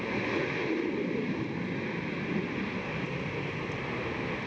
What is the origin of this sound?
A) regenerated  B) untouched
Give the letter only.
B